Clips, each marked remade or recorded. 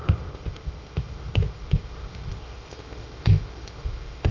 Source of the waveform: remade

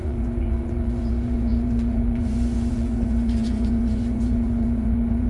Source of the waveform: remade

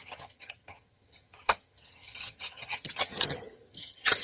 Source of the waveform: remade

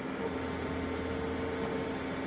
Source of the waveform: recorded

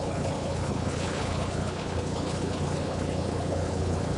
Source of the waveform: remade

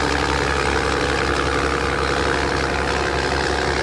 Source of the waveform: recorded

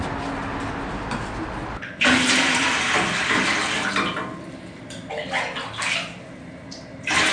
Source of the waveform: recorded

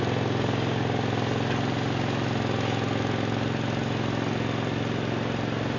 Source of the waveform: recorded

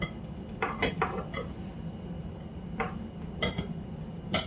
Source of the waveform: remade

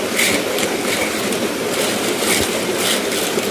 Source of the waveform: recorded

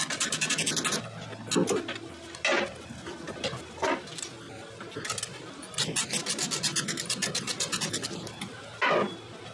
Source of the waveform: recorded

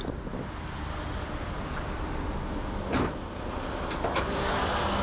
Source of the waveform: recorded